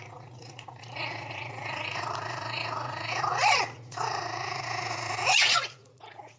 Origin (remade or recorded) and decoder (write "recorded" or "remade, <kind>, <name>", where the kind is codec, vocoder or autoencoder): remade, vocoder, Vocos